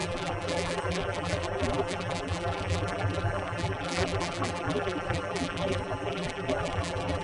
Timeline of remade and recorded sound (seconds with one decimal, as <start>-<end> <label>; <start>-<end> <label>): 0.0-7.2 remade